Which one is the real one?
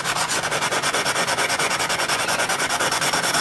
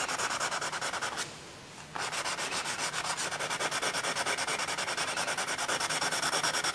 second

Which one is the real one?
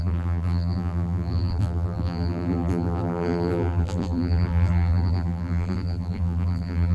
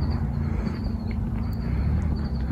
second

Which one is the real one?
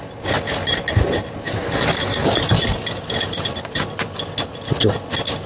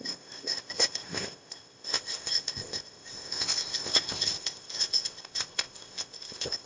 first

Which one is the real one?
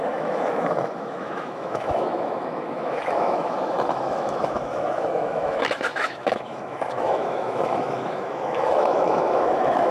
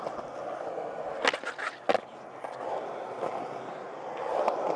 second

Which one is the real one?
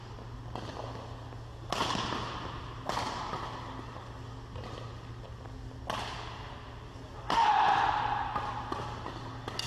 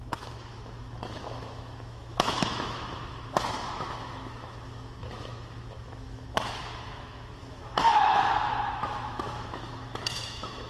first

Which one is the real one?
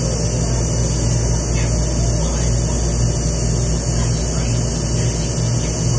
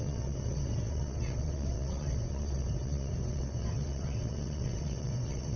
first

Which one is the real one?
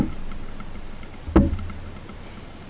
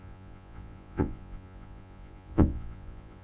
first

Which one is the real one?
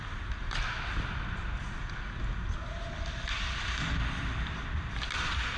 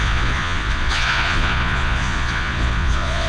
first